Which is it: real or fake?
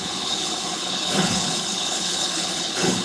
fake